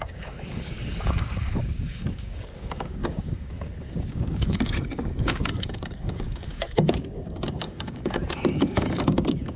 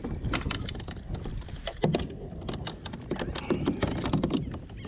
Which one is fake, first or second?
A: first